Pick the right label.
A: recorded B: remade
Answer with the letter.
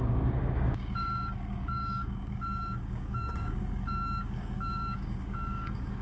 B